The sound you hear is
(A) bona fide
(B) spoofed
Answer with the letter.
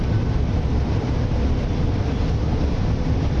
A